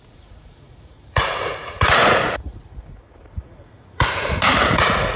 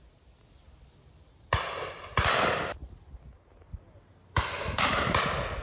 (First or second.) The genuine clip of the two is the second